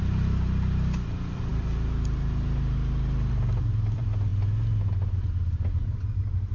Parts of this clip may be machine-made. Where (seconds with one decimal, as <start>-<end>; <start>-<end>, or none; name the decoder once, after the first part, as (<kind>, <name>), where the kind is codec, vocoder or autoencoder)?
0.0-4.3 (vocoder, BigVGAN v2); 5.7-6.5

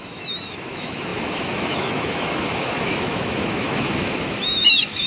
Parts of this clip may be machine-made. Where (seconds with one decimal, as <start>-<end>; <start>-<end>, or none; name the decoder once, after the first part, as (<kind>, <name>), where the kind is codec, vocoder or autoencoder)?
0.0-5.1 (autoencoder, DAC-VAE)

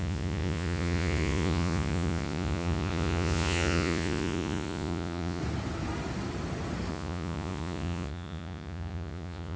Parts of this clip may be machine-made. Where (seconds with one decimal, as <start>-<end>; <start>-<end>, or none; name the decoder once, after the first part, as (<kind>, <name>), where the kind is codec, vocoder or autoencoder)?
0.0-5.4 (vocoder, Vocos); 6.9-9.6